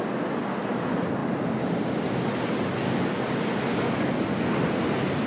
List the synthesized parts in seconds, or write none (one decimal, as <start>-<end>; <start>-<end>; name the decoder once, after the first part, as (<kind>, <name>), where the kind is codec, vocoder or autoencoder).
none